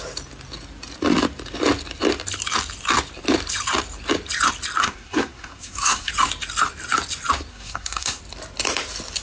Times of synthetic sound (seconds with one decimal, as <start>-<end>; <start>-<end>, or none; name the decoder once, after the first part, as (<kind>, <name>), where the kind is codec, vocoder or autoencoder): 4.8-6.1 (codec, SNAC); 7.5-8.2